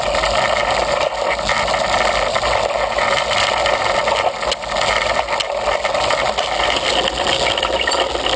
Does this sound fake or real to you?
real